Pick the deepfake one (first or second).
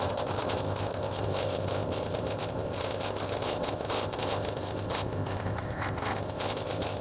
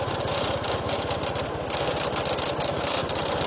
first